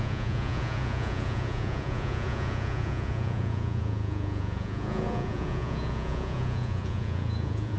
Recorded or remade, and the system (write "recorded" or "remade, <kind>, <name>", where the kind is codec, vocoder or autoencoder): remade, vocoder, Vocos